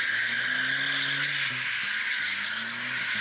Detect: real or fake real